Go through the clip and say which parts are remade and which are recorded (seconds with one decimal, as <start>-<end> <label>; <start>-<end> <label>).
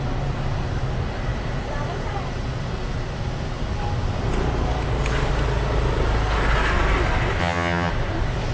0.0-7.4 recorded; 7.4-7.9 remade; 7.9-8.5 recorded